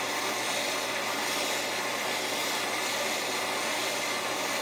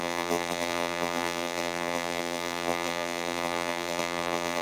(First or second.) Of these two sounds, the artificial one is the second